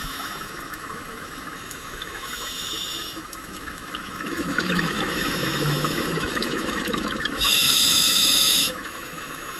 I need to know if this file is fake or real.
fake